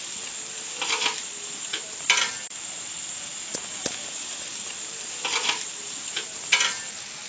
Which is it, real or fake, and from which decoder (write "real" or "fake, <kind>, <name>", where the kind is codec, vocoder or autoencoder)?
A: real